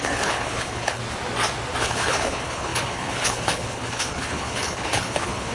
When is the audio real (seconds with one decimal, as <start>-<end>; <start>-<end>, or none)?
1.0-1.8